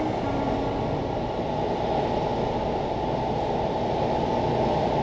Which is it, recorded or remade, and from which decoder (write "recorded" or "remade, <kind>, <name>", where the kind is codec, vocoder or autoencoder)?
recorded